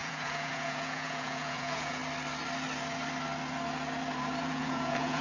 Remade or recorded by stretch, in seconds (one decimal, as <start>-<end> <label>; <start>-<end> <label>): 0.0-2.0 remade; 2.0-4.4 recorded; 4.4-5.2 remade